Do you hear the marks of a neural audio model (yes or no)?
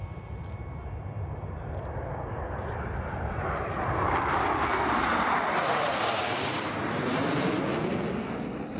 no